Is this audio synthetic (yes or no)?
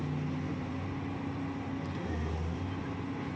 no